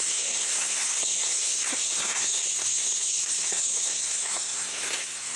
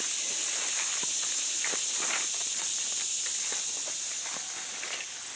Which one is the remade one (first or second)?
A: first